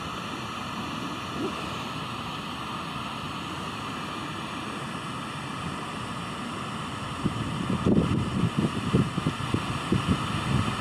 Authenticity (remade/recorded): recorded